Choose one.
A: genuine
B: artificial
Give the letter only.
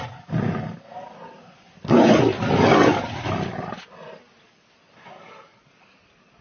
A